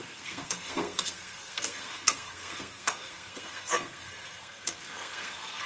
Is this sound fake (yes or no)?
yes